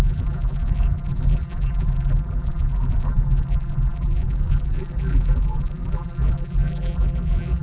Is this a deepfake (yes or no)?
yes